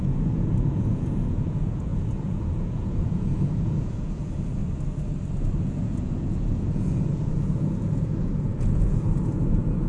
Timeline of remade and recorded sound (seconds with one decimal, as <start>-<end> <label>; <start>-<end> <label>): 0.0-4.6 remade; 4.6-5.6 recorded; 5.6-9.9 remade